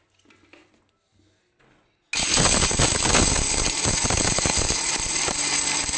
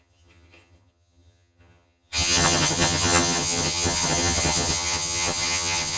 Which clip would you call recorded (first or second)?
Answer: first